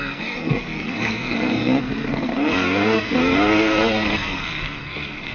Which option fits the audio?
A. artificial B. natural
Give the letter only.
A